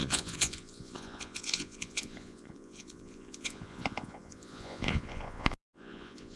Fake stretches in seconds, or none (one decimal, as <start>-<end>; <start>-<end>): 0.0-6.4